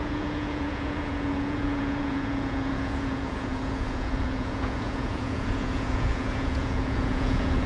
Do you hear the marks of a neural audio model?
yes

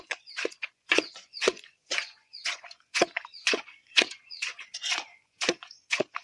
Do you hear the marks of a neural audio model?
yes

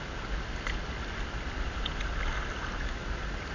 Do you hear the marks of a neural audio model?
no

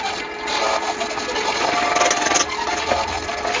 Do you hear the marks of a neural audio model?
no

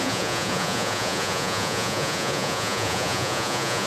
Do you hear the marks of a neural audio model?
yes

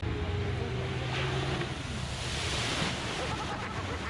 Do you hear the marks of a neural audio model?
no